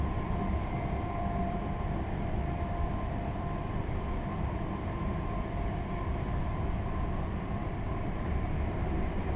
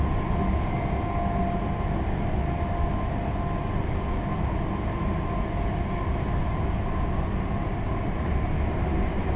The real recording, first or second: second